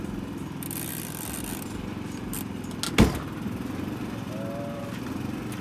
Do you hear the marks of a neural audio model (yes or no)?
no